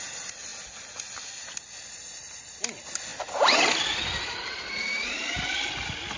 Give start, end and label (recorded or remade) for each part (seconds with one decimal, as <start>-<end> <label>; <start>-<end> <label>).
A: 0.0-6.2 recorded